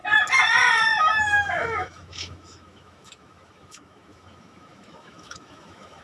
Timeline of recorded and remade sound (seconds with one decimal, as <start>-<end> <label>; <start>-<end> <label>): 0.0-1.0 recorded; 1.0-6.0 remade